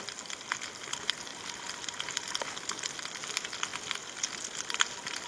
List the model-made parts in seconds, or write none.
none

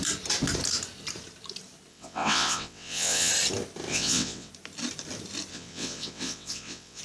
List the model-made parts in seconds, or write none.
1.9-3.3; 3.9-4.5; 5.5-7.0

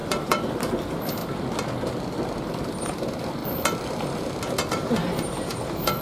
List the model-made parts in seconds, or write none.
0.0-1.2; 2.4-3.4; 4.7-6.0

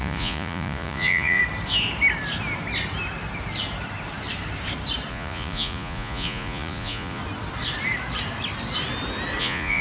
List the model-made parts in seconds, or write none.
0.0-1.4; 5.1-7.2; 9.4-9.8

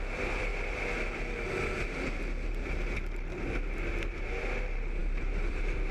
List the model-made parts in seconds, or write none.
0.0-0.5; 4.0-5.9